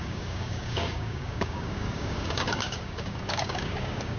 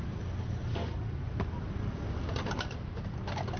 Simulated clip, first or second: first